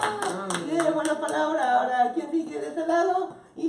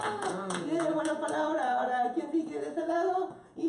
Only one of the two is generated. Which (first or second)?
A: second